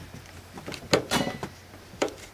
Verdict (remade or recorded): recorded